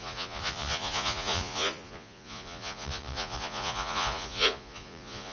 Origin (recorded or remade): remade